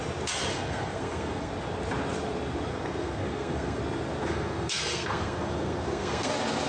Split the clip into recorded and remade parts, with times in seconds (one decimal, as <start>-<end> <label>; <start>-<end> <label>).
0.0-0.5 recorded; 0.5-1.5 remade; 1.5-2.7 recorded; 2.7-3.8 remade; 3.8-4.2 recorded; 4.2-6.3 remade; 6.3-6.7 recorded

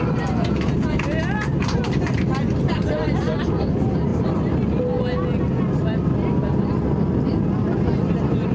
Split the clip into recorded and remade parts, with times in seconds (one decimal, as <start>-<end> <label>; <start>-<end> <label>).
0.0-8.5 recorded

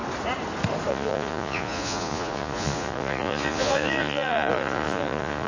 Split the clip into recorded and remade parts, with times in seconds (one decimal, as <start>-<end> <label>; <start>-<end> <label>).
0.0-0.9 recorded; 0.9-5.5 remade

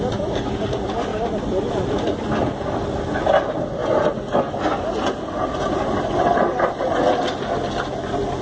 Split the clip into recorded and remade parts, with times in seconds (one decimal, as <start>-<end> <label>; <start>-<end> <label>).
0.0-1.1 recorded; 1.1-1.8 remade; 1.8-8.4 recorded

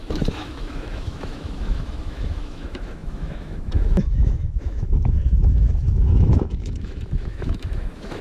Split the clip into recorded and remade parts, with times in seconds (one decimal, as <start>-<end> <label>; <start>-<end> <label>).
0.0-8.2 remade